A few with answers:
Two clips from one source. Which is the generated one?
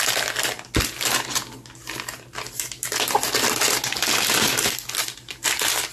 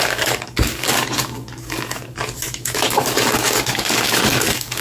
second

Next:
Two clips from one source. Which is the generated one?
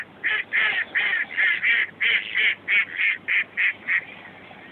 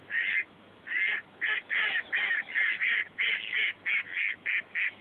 second